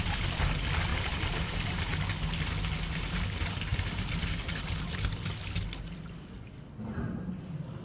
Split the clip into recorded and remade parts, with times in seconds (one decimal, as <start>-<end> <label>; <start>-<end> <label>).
0.0-0.9 recorded; 0.9-2.0 remade; 2.0-7.8 recorded